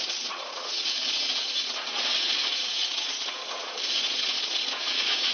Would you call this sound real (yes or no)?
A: no